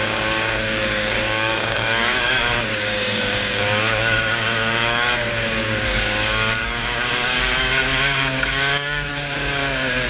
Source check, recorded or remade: remade